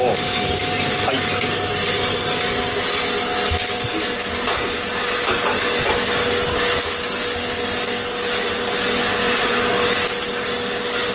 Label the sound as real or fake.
real